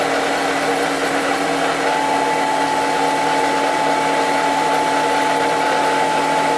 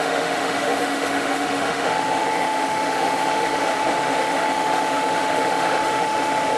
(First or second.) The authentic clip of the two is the first